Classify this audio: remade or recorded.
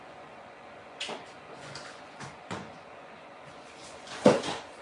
remade